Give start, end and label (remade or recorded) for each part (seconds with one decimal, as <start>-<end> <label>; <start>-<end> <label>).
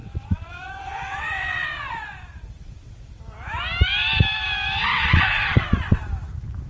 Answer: 0.0-3.2 remade; 3.2-4.9 recorded; 4.9-6.0 remade; 6.0-6.7 recorded